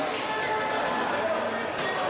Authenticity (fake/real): real